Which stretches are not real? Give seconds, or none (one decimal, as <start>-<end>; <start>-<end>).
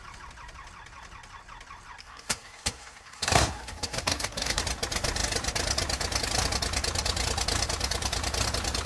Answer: 2.0-4.6